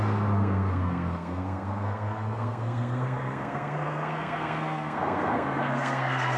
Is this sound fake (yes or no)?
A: yes